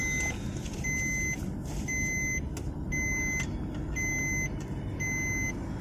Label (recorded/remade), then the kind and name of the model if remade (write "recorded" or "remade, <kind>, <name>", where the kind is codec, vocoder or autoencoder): recorded